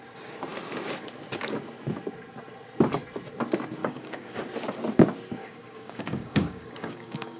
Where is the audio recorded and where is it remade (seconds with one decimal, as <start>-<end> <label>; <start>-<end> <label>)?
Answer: 0.0-3.8 recorded; 3.8-4.4 remade; 4.4-5.4 recorded; 5.4-7.4 remade